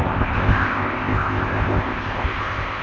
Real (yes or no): no